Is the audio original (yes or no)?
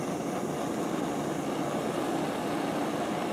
yes